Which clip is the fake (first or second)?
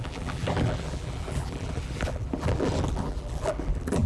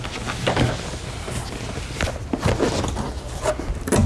first